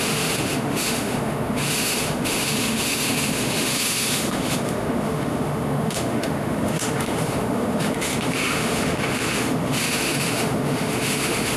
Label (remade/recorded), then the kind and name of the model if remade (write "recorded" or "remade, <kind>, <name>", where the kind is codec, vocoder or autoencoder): remade, autoencoder, DAC-VAE